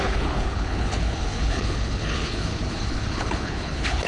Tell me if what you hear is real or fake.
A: fake